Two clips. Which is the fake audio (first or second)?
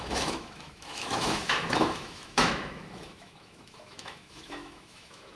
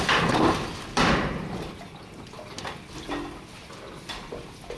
first